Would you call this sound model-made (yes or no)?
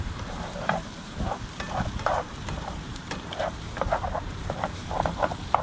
yes